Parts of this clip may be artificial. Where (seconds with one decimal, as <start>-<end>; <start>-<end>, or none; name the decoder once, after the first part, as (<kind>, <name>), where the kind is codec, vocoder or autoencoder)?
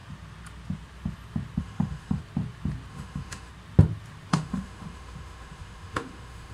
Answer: 1.6-2.2 (autoencoder, DAC-VAE); 2.9-3.5; 4.3-6.5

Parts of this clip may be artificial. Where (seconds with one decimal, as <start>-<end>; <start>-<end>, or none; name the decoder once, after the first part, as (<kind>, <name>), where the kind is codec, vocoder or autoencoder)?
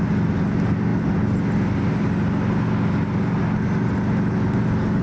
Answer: none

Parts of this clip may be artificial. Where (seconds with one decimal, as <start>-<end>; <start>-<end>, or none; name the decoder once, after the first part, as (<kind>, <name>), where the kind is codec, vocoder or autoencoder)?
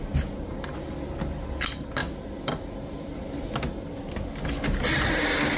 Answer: none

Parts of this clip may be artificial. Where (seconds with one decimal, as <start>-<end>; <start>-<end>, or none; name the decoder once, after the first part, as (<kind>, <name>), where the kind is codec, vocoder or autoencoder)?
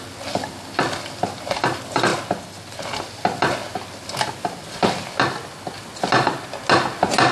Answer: none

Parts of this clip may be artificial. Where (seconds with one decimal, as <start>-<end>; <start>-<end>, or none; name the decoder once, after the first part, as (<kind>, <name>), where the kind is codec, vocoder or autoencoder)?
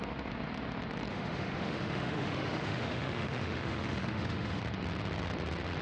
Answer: 1.1-4.6 (autoencoder, DAC-VAE)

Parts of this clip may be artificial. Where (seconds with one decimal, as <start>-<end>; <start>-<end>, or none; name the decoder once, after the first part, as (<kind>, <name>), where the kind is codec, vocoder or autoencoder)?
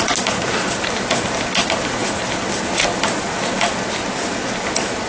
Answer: none